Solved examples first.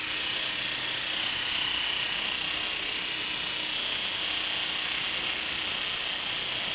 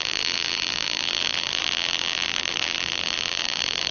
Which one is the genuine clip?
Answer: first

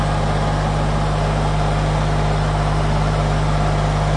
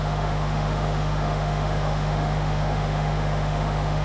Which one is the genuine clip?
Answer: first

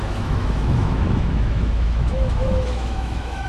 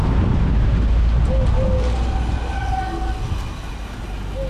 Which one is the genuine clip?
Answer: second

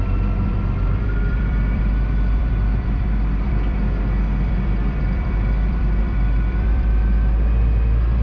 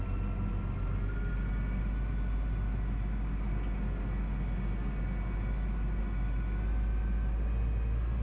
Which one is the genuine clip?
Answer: second